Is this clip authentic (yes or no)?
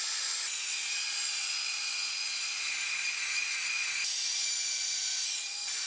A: no